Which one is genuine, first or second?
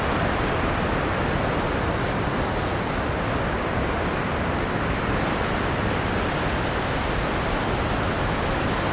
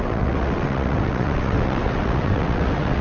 first